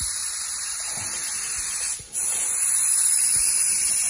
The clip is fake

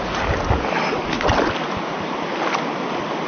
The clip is real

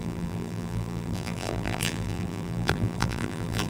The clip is fake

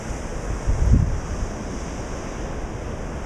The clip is real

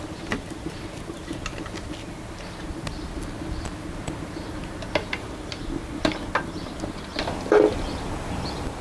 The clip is real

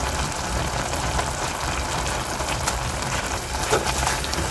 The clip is fake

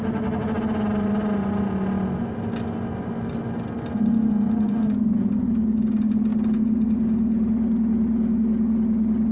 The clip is real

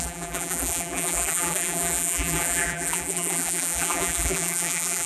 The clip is fake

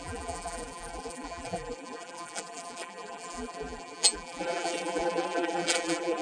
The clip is fake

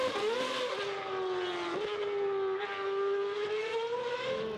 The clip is real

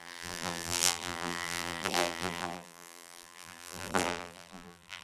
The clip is fake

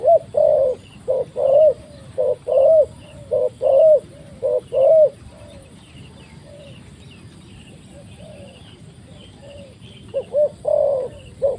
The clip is fake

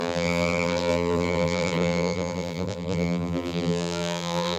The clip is fake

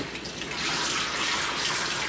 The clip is real